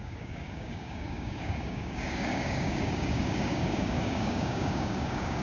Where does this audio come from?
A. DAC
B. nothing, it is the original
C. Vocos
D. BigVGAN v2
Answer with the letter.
A